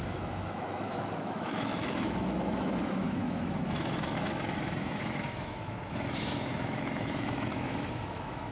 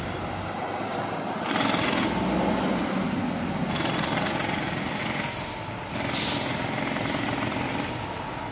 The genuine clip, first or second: second